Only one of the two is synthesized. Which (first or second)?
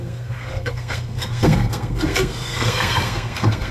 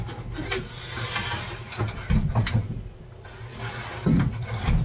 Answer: first